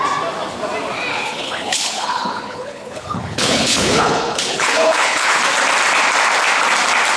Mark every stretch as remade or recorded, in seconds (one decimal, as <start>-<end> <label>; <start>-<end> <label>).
0.0-1.1 recorded; 1.1-5.4 remade; 5.4-7.2 recorded

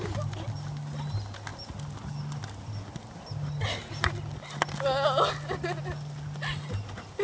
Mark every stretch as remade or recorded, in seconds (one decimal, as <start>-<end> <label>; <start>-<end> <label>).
0.0-7.2 recorded

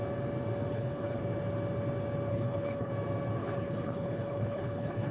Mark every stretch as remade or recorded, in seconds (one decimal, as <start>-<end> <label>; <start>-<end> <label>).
0.0-0.7 recorded; 0.7-1.2 remade; 1.2-2.3 recorded; 2.3-2.9 remade; 2.9-3.4 recorded; 3.4-5.1 remade

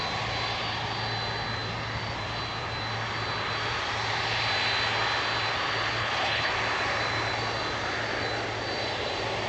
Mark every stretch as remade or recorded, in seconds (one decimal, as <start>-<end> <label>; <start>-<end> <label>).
0.0-6.0 recorded; 6.0-6.5 remade; 6.5-9.5 recorded

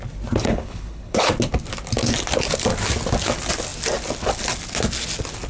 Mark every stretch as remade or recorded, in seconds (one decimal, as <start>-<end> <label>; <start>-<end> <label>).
0.0-0.4 recorded; 0.4-1.3 remade; 1.3-5.5 recorded

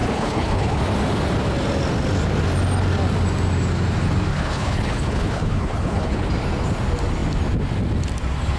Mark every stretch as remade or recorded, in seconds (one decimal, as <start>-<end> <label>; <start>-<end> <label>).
0.0-0.8 remade; 0.8-4.3 recorded; 4.3-6.3 remade; 6.3-8.6 recorded

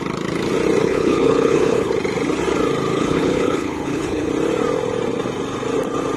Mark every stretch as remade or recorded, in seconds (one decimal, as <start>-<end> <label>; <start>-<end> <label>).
0.0-0.8 recorded; 0.8-1.9 remade; 1.9-2.9 recorded; 2.9-4.3 remade; 4.3-6.2 recorded

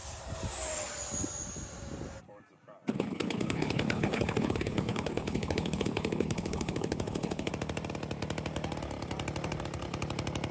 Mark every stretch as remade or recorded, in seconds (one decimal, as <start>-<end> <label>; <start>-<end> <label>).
0.0-2.9 recorded; 2.9-7.5 remade; 7.5-10.5 recorded